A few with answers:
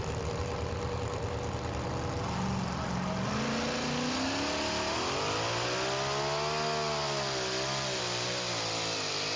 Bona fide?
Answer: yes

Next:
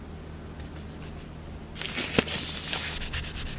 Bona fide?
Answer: yes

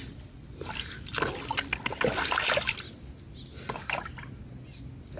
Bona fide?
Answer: yes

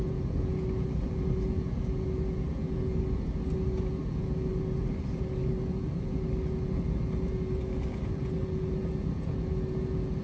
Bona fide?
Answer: no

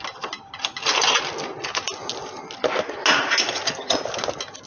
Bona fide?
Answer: yes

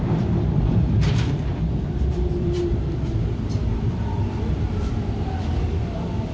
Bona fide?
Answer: no